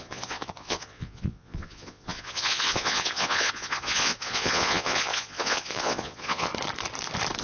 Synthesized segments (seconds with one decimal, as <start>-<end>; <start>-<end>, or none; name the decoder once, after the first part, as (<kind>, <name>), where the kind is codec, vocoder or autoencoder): 0.0-6.5 (vocoder, Vocos)

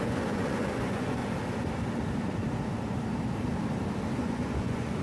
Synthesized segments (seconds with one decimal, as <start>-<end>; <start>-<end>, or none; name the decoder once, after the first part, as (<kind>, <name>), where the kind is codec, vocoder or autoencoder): 0.0-1.2 (vocoder, Vocos); 4.2-5.0